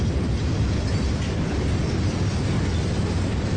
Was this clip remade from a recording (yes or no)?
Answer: no